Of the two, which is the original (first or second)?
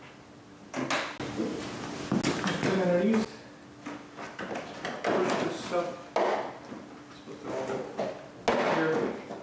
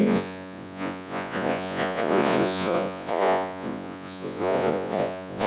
first